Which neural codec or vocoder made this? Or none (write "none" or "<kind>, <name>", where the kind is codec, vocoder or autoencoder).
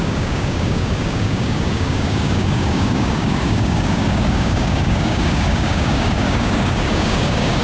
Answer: codec, DAC